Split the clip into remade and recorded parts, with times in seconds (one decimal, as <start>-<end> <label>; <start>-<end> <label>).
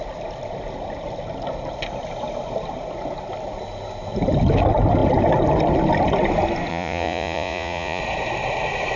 0.0-6.7 recorded; 6.7-8.0 remade; 8.0-9.0 recorded